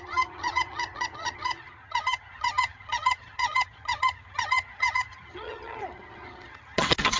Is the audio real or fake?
fake